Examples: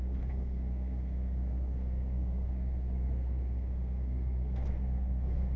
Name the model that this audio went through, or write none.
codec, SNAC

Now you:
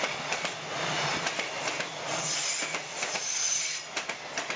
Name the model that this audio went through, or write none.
none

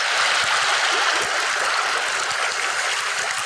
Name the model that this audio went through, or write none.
none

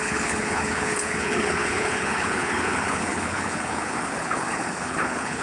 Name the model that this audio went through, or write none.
codec, HILCodec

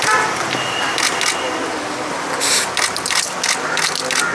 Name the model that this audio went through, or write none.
none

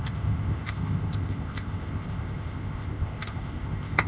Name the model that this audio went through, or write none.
codec, ZipCodec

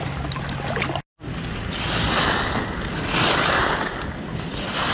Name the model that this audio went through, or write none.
none